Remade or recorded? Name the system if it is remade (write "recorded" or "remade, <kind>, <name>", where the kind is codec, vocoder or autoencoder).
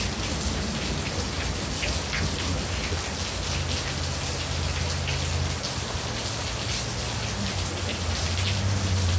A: recorded